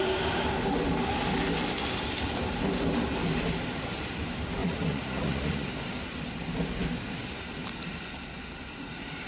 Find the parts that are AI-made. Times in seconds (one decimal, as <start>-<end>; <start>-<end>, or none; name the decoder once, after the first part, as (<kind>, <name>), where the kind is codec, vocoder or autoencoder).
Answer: 4.6-5.7 (vocoder, Vocos)